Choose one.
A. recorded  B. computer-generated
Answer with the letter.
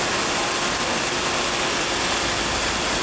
A